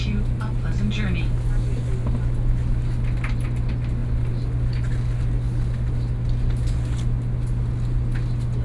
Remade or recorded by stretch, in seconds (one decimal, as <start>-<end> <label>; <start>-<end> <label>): 0.0-8.6 recorded